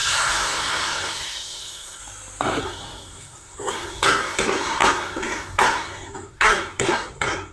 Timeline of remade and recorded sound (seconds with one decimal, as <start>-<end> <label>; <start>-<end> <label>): 0.0-2.0 remade; 2.0-2.6 recorded; 2.6-7.5 remade